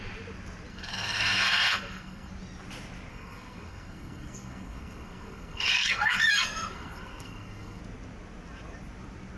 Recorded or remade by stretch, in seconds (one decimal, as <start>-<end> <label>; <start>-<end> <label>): 0.0-0.7 recorded; 0.7-2.3 remade; 2.3-3.1 recorded; 3.1-7.8 remade; 7.8-9.4 recorded